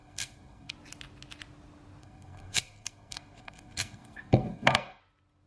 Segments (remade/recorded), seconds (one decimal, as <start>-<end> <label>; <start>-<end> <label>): 0.0-0.7 remade; 0.7-2.0 recorded; 2.0-5.0 remade; 5.0-5.5 recorded